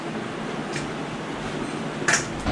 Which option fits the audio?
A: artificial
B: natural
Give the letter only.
B